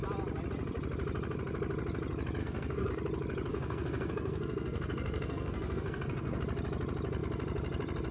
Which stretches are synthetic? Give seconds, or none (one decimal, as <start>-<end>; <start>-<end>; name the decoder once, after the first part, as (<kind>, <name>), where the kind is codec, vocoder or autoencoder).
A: 2.4-2.9 (codec, SNAC); 3.5-6.4